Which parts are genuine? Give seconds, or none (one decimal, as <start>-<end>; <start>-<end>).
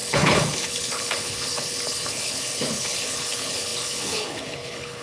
none